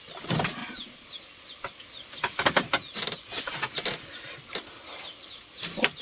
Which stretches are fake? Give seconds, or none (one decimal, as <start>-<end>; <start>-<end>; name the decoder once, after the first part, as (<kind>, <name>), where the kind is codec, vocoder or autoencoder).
0.6-1.2 (vocoder, Vocos)